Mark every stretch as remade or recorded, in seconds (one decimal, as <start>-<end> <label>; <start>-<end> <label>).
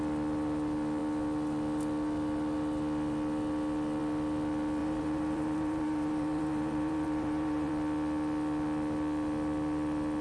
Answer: 0.0-4.8 recorded; 4.8-7.7 remade; 7.7-10.2 recorded